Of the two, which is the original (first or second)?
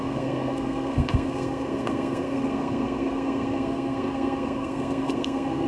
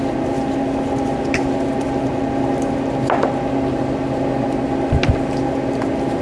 second